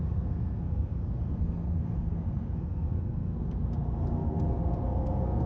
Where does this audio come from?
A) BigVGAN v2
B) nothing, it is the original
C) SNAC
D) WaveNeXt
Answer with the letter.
C